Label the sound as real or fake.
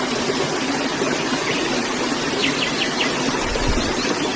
real